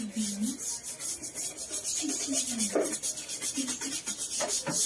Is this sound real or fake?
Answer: real